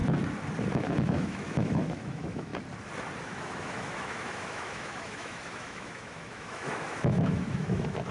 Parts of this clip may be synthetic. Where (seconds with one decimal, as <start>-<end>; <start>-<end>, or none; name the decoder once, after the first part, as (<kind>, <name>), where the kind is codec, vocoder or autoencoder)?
0.7-2.5 (autoencoder, DAC-VAE); 3.2-8.1